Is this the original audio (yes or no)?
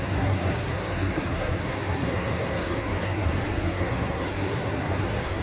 no